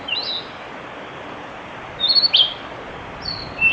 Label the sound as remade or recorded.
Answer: recorded